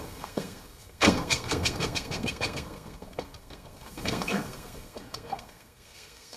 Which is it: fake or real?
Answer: fake